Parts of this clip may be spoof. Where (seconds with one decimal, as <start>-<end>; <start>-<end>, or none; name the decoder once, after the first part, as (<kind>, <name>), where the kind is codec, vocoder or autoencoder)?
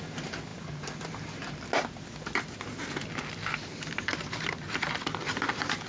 none